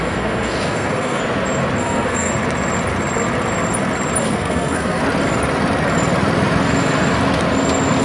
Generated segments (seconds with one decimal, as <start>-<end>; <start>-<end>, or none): 0.0-1.2; 1.8-2.3; 4.2-5.0